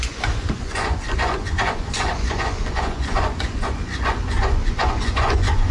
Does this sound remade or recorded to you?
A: remade